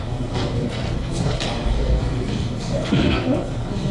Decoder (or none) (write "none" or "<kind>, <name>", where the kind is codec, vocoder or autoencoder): codec, SNAC